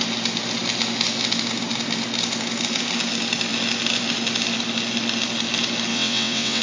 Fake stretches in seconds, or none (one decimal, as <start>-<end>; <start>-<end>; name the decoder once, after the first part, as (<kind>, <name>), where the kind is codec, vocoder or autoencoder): 5.9-6.6 (vocoder, WaveNeXt)